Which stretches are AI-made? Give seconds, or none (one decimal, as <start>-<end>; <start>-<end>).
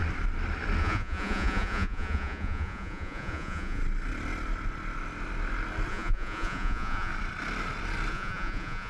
0.8-3.8; 5.9-7.1; 8.1-8.9